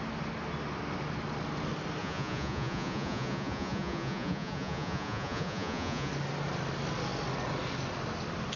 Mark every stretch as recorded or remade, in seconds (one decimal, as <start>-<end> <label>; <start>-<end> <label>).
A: 0.0-2.0 recorded; 2.0-6.1 remade; 6.1-8.6 recorded